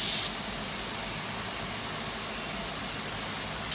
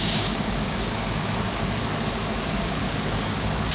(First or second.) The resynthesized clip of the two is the second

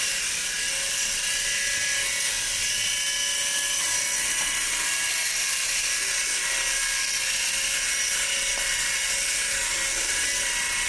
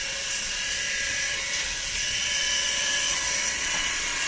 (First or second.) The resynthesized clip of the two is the second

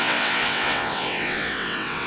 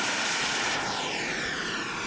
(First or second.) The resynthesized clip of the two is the first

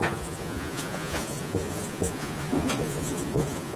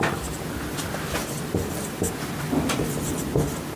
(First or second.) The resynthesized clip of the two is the first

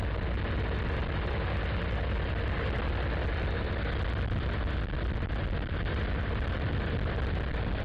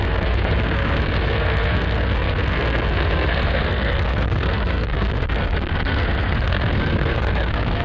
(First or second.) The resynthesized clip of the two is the second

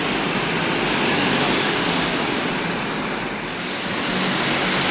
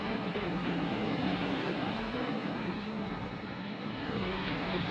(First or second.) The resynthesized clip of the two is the second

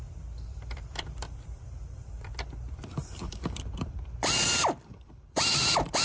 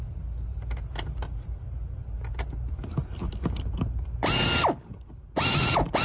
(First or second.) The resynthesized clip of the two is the first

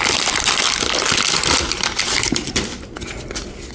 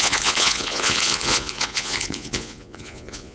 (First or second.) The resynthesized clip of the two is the second